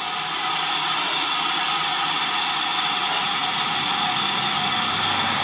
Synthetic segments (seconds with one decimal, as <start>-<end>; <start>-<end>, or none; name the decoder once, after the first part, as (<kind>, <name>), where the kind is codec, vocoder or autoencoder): none